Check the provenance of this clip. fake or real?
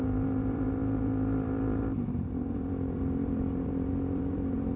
fake